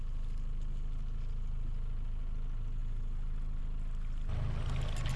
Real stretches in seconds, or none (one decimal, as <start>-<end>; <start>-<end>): 0.0-2.8; 3.6-5.2